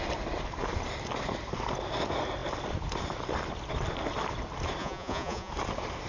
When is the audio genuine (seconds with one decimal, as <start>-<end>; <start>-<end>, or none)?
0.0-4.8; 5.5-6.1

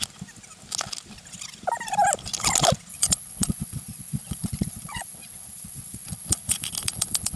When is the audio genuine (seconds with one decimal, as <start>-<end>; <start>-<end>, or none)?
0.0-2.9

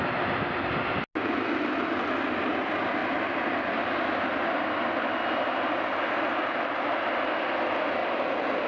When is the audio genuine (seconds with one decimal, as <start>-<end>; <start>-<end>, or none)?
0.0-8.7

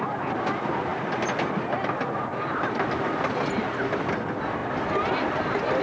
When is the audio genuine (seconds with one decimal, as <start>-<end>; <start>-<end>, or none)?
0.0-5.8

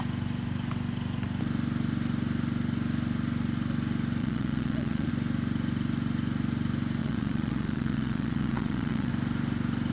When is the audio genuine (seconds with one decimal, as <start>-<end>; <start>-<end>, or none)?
0.0-4.2; 5.1-7.0; 9.1-9.9